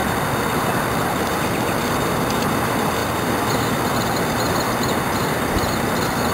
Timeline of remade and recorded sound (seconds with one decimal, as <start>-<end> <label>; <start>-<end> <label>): 0.0-6.3 remade